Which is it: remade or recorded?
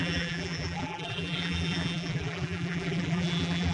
remade